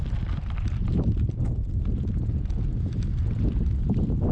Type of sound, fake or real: real